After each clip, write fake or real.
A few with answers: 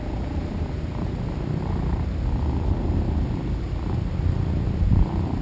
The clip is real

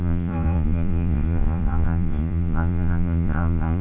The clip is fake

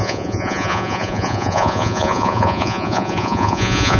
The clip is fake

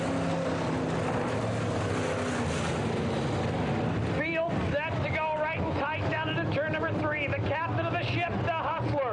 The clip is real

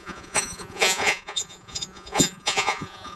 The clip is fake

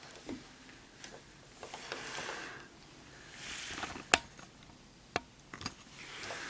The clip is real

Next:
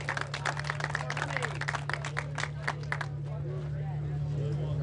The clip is real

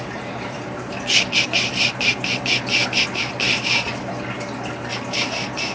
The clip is real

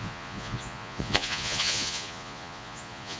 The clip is fake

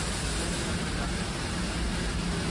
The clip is real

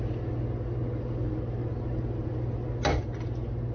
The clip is real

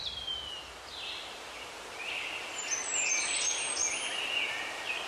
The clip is real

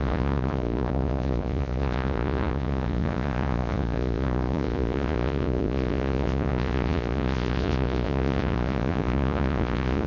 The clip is fake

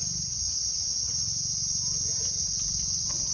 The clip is real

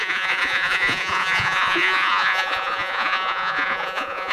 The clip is fake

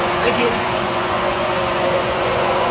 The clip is fake